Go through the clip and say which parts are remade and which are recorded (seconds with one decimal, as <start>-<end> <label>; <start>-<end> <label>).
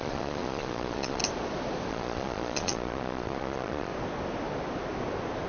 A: 0.0-1.2 remade; 1.2-1.9 recorded; 1.9-3.9 remade; 3.9-5.5 recorded